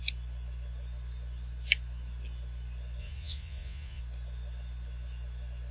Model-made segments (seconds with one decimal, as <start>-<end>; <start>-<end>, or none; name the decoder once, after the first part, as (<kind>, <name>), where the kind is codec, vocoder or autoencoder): 3.0-4.0 (vocoder, Vocos)